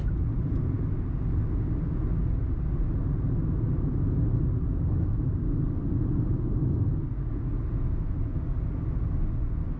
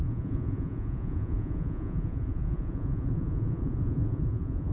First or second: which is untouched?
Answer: first